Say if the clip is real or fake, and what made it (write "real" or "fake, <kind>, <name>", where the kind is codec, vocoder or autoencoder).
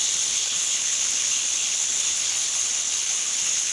fake, codec, HILCodec